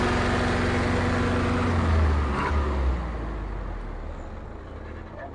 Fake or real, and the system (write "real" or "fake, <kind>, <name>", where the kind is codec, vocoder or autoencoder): real